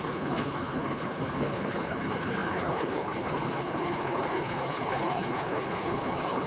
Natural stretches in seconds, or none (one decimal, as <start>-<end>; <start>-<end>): none